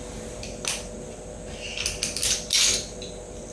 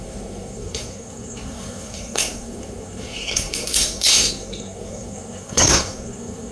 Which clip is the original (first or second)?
first